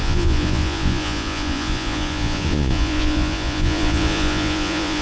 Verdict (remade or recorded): remade